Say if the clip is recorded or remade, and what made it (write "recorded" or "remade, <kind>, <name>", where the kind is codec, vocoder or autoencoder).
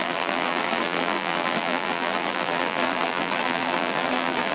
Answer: remade, vocoder, BigVGAN v2